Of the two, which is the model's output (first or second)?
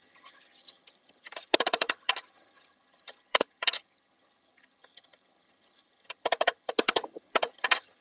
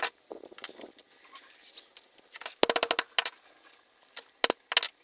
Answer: first